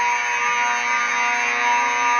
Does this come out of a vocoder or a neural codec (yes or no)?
no